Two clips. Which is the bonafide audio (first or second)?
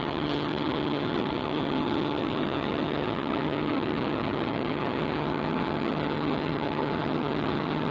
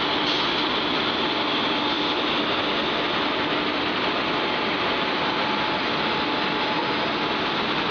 second